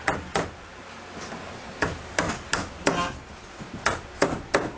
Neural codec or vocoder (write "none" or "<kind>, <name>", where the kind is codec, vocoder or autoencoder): none